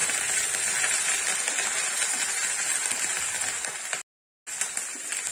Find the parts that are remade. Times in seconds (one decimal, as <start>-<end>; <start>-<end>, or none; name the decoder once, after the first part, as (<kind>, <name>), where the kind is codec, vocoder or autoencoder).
none